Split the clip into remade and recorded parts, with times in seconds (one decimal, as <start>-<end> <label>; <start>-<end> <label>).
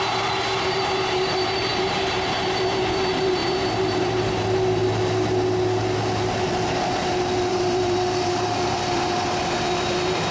0.0-4.8 remade; 4.8-7.5 recorded; 7.5-10.3 remade